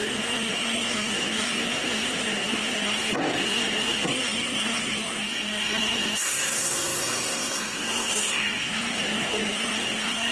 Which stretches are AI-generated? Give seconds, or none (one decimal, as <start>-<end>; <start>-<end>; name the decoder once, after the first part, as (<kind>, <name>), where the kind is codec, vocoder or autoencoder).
0.0-10.3 (codec, SNAC)